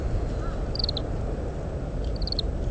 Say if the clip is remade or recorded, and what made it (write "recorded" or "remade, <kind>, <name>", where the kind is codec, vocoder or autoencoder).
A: recorded